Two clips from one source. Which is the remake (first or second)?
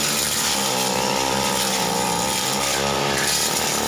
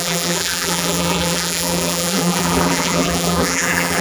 second